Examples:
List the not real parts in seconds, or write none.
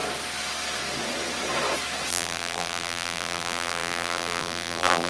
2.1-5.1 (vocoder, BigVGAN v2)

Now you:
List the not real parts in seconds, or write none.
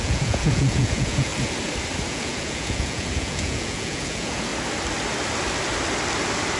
0.0-1.3 (vocoder, Vocos); 2.1-4.5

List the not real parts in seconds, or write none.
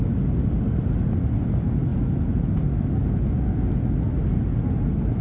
none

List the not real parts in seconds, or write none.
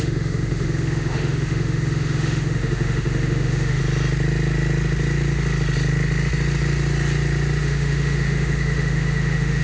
0.0-3.8 (autoencoder, DAC-VAE); 7.6-9.6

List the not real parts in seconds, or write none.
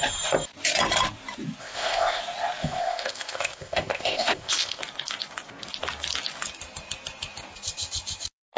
1.6-2.2 (codec, ZipCodec); 2.6-4.8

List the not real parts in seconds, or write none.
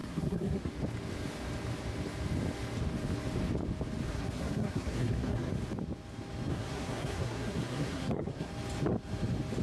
0.0-0.7 (codec, SNAC); 4.1-5.5; 6.5-8.5